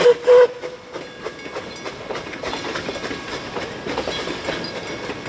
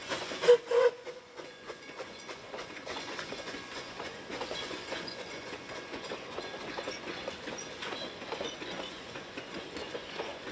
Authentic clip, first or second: first